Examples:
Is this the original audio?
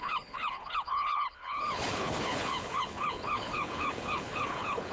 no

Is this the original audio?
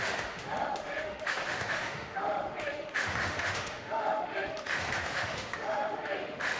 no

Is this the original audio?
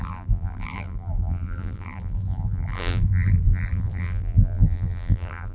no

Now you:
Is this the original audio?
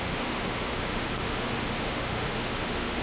no